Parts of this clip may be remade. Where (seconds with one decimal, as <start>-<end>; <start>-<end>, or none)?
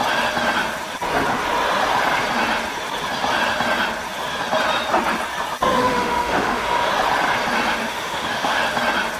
5.8-6.9; 7.8-8.6